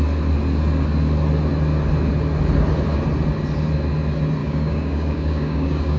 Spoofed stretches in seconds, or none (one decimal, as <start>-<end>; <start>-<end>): 4.4-6.0